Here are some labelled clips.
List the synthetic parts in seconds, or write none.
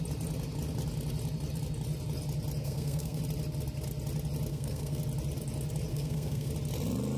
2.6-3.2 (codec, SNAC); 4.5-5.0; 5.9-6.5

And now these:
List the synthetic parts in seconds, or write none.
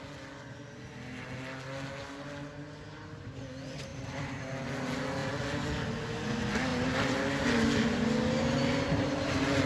3.9-4.4 (vocoder, BigVGAN v2); 5.2-5.9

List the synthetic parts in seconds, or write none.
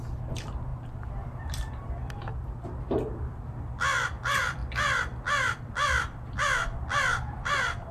0.0-2.3 (vocoder, BigVGAN v2); 3.1-4.6; 5.6-7.9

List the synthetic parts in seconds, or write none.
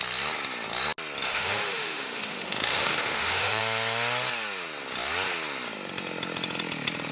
1.3-3.6 (autoencoder, DAC-VAE)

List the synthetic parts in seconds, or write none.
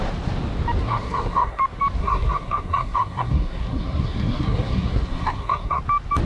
0.8-1.6 (codec, SNAC); 2.0-5.8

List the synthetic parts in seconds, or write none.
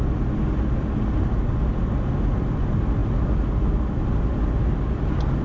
none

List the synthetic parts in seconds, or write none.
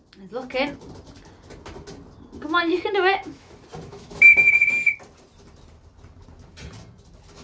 2.7-3.5 (autoencoder, DAC-VAE); 3.9-4.7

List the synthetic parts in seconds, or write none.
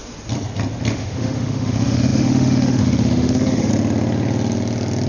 0.9-3.7 (autoencoder, DAC-VAE)